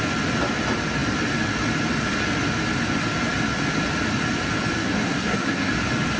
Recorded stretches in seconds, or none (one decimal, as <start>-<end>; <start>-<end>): 0.0-4.8; 5.7-6.2